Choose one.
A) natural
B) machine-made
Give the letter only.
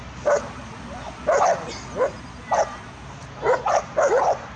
A